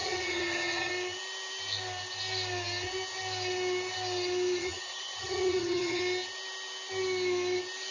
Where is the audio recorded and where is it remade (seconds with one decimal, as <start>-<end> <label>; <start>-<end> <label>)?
0.0-0.9 remade; 0.9-4.6 recorded; 4.6-6.0 remade; 6.0-7.9 recorded

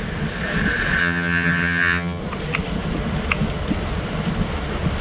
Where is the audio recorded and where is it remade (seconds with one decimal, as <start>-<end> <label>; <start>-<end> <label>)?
0.0-1.0 recorded; 1.0-2.2 remade; 2.2-5.0 recorded

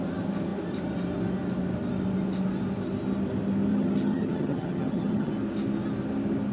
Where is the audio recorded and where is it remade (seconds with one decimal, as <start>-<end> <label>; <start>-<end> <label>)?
0.0-3.7 recorded; 3.7-5.3 remade; 5.3-6.5 recorded

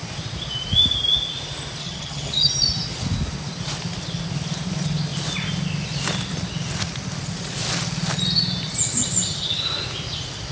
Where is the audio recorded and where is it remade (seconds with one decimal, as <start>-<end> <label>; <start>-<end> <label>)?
0.0-1.8 recorded; 1.8-2.5 remade; 2.5-10.5 recorded